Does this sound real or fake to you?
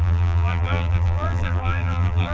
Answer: fake